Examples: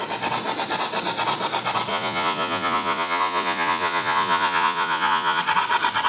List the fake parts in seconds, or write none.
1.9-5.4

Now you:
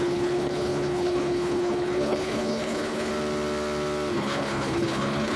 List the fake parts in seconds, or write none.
0.0-3.1; 4.1-5.4

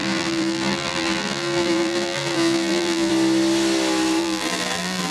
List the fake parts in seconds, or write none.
0.0-3.1; 4.2-5.1

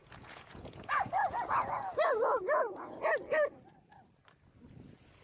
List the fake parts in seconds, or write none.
0.0-3.1